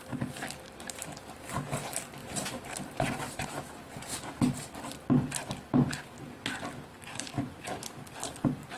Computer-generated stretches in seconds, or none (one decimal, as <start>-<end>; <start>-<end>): 2.2-3.5